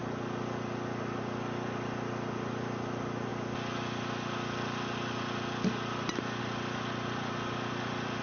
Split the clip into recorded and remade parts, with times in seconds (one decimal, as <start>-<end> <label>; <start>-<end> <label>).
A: 0.0-8.2 recorded

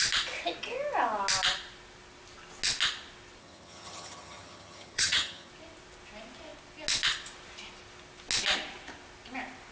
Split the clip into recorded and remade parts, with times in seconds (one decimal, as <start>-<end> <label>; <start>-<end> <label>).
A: 0.0-3.4 recorded; 3.4-5.5 remade; 5.5-9.7 recorded

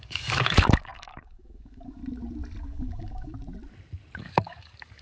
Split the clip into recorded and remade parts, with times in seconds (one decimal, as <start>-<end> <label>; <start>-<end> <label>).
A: 0.0-2.0 remade; 2.0-2.6 recorded; 2.6-3.3 remade; 3.3-4.2 recorded; 4.2-5.0 remade

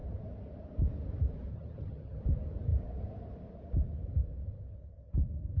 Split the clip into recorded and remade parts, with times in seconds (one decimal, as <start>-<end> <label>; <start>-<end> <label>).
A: 0.0-1.5 recorded; 1.5-2.2 remade; 2.2-5.6 recorded

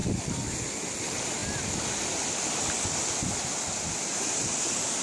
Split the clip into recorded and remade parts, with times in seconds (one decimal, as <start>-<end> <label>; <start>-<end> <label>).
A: 0.0-5.0 recorded

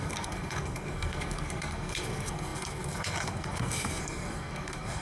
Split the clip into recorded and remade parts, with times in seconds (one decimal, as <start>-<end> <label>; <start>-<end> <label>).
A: 0.0-5.0 remade

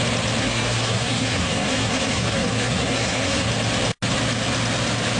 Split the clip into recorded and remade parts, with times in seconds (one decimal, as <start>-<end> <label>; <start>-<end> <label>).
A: 0.0-0.4 recorded; 0.4-3.5 remade; 3.5-5.2 recorded